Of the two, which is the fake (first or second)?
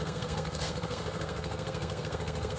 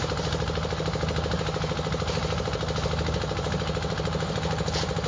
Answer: first